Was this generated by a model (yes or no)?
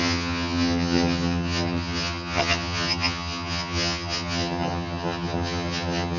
yes